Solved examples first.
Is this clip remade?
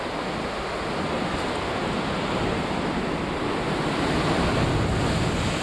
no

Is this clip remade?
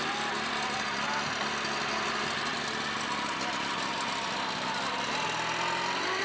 no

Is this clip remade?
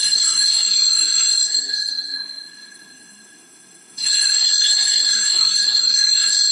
yes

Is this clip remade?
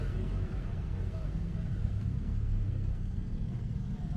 yes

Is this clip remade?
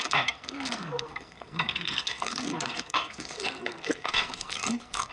yes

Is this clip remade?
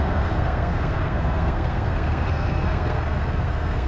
yes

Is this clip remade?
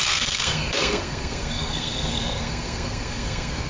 yes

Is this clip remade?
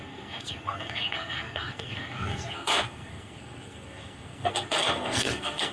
yes